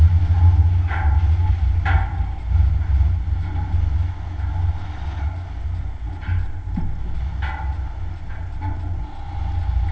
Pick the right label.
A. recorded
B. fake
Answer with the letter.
A